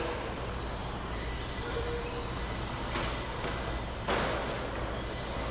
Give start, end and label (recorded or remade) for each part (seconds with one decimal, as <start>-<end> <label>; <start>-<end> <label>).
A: 0.0-5.5 recorded